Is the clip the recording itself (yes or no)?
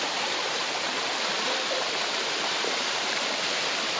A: no